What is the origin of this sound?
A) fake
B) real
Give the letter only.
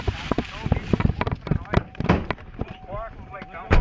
B